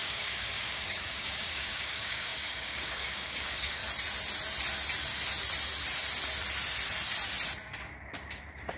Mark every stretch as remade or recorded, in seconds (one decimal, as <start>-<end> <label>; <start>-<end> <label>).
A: 0.0-3.8 remade; 3.8-8.8 recorded